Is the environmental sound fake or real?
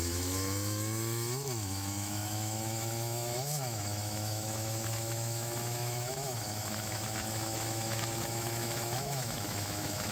fake